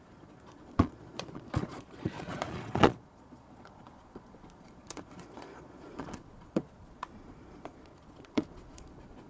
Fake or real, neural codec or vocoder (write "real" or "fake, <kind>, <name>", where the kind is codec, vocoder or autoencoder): fake, vocoder, Vocos